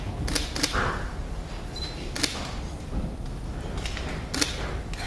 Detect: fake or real real